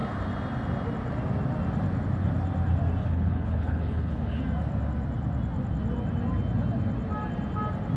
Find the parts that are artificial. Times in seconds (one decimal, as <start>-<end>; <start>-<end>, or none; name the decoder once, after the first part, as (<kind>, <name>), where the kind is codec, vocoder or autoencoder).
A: 3.0-4.4 (codec, HILCodec)